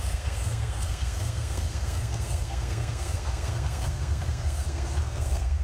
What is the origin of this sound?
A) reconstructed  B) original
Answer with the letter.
A